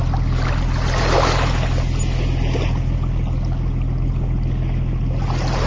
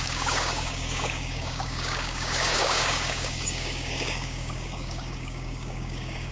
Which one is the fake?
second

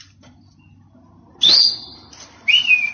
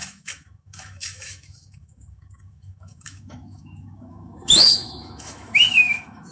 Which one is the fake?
second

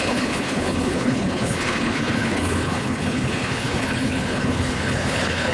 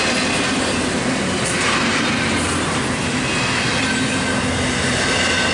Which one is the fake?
first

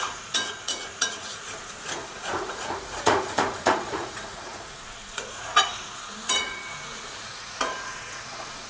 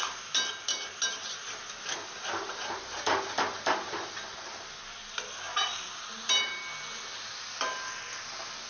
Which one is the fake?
first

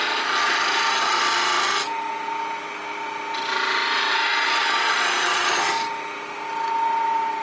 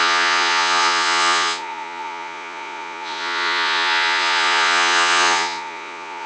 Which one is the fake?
second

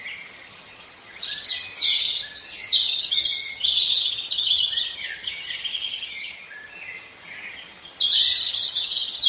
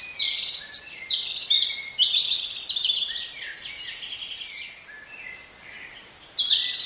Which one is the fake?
first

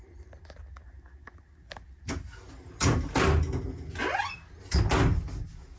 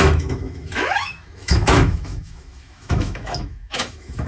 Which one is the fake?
second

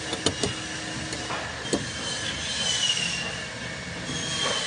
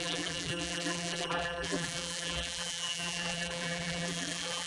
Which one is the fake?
second